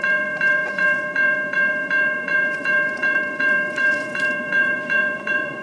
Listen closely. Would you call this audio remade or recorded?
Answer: remade